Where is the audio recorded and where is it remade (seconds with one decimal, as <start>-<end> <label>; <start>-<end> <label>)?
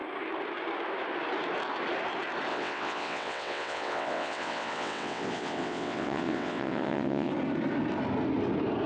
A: 0.0-2.5 recorded; 2.5-7.3 remade; 7.3-8.9 recorded